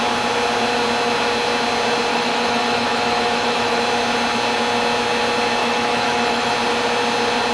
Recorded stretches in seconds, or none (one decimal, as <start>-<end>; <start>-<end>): 0.0-2.1; 3.8-5.6; 6.5-7.5